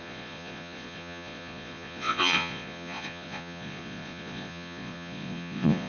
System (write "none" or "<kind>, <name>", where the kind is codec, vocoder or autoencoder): vocoder, Vocos